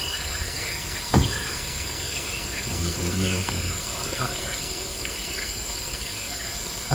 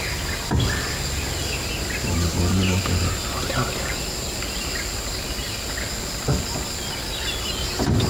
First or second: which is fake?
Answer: first